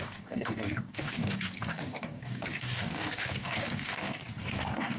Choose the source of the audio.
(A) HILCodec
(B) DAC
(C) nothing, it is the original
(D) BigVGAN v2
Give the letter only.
B